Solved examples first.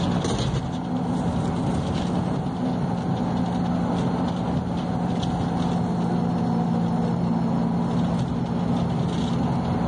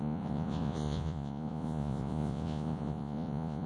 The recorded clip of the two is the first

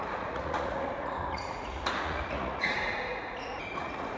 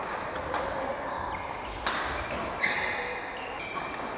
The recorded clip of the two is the second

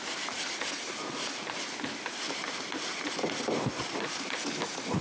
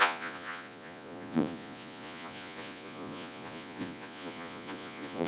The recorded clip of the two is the first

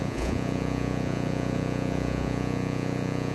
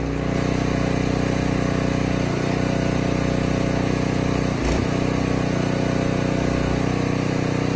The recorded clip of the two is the second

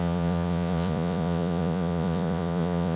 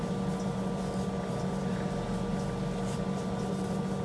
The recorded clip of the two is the second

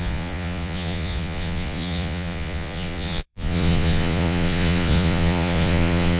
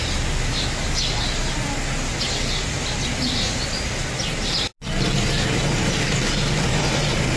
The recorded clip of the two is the second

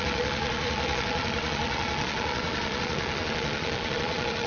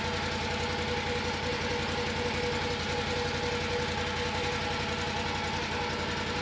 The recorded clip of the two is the second